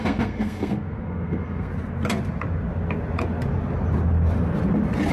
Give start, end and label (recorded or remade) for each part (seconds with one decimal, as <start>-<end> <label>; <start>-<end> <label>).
0.0-1.7 remade; 1.7-5.1 recorded